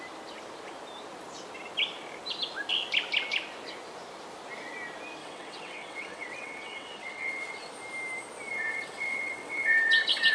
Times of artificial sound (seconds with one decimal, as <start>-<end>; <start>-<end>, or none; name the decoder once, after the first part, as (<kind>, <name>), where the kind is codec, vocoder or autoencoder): 5.2-7.7 (vocoder, WaveNeXt); 8.5-10.3

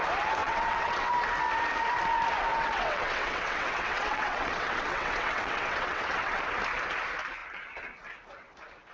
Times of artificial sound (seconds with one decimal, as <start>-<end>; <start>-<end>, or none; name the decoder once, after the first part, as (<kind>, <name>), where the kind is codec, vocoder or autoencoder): 0.4-1.1 (vocoder, WaveNeXt); 2.5-6.4